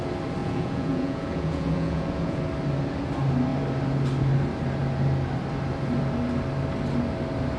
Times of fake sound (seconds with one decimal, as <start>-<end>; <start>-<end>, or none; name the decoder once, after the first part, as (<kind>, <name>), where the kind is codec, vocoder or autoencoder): 0.4-2.4 (vocoder, Vocos)